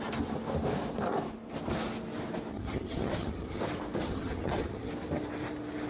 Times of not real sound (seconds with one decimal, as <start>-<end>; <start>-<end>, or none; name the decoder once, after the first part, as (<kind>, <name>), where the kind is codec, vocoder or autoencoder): 2.5-3.6 (vocoder, HiFi-GAN); 4.0-4.9